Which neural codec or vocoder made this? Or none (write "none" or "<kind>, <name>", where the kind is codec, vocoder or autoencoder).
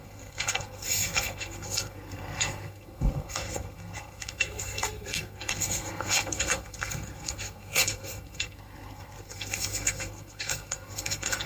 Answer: codec, SNAC